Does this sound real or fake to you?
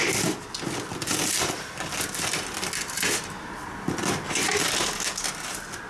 real